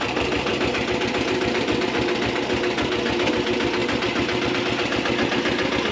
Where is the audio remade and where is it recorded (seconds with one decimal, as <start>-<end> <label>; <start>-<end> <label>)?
0.0-5.9 recorded